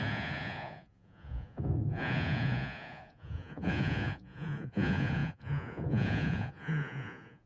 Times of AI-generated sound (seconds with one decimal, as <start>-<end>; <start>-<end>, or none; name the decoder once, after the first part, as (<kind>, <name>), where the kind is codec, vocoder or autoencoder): 0.0-7.5 (vocoder, Vocos)